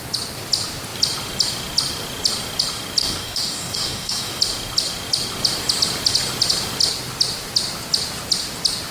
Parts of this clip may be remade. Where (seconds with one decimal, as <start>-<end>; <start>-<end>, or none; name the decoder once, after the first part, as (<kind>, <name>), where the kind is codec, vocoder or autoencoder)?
3.0-4.4 (codec, DAC)